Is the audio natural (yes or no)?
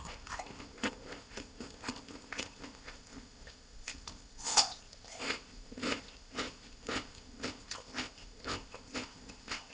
no